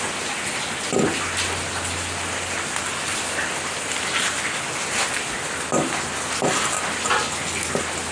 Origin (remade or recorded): recorded